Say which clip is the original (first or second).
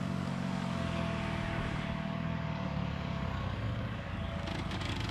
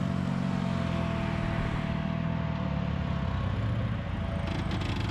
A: second